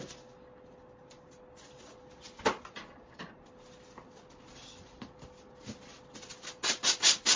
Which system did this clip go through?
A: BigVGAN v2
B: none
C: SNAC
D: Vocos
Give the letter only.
B